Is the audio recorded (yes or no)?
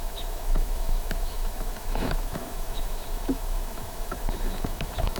no